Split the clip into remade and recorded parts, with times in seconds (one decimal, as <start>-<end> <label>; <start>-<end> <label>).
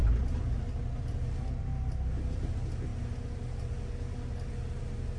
0.0-5.2 recorded